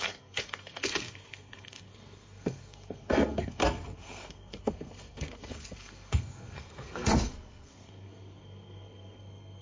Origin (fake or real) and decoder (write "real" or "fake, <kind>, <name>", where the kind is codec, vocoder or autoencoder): fake, codec, SNAC